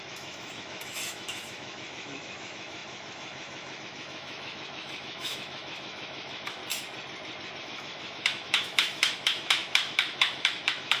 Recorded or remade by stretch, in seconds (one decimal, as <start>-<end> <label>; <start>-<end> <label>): 0.0-6.6 remade; 6.6-7.6 recorded; 7.6-11.0 remade